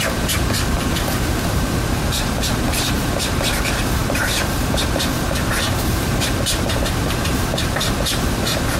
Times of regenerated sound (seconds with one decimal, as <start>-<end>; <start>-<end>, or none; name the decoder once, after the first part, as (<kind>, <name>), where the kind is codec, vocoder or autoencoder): 0.0-8.8 (vocoder, BigVGAN v2)